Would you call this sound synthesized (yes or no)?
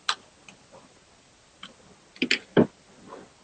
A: no